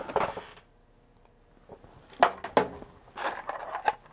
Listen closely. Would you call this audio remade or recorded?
recorded